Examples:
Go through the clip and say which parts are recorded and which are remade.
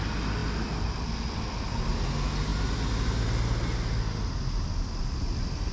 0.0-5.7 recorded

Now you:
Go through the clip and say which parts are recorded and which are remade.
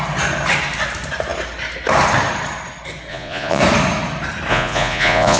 0.0-3.1 recorded; 3.1-3.6 remade; 3.6-4.5 recorded; 4.5-5.4 remade